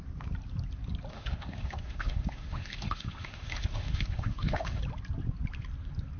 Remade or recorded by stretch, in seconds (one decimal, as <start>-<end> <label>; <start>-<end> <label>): 0.0-1.1 recorded; 1.1-4.8 remade; 4.8-6.2 recorded